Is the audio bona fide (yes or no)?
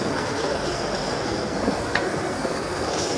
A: no